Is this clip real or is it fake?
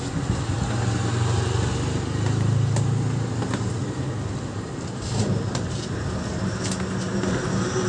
real